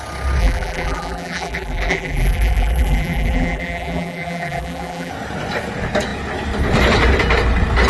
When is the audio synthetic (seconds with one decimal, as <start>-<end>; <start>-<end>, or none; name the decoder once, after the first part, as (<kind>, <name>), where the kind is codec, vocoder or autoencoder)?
0.4-5.1 (vocoder, BigVGAN v2)